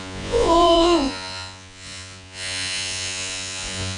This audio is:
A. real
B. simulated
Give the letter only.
B